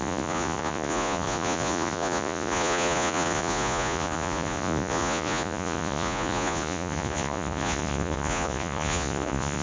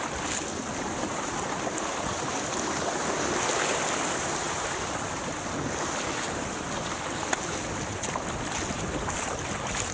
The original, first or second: second